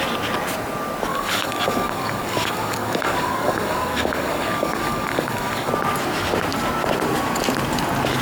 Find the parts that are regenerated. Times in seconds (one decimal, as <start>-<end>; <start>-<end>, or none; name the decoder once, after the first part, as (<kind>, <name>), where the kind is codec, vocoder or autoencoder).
1.1-5.7 (codec, DAC)

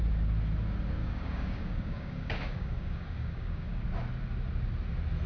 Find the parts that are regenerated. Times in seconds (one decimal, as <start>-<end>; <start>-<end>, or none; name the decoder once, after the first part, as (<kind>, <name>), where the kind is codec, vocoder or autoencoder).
1.0-3.8 (codec, DAC)

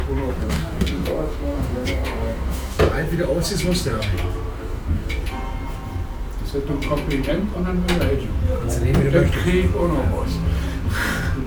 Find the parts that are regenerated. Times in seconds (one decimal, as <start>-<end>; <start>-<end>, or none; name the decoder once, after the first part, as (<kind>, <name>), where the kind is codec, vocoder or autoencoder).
0.4-2.8 (codec, DAC); 4.5-5.1

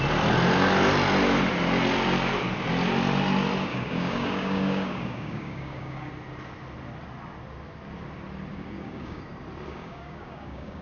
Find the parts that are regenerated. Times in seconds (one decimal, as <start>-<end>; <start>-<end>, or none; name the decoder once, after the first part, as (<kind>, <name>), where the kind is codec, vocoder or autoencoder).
3.7-6.1 (codec, DAC); 8.5-9.2; 9.7-10.8

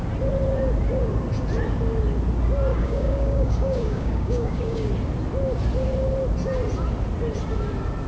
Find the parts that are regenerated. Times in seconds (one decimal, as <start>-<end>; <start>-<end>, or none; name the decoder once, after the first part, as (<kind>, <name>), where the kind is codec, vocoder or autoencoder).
2.7-4.9 (codec, DAC)

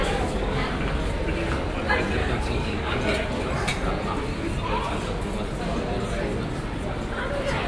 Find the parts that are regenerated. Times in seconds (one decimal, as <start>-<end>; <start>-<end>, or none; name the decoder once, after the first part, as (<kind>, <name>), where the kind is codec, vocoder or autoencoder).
0.0-0.7 (codec, DAC); 2.2-3.0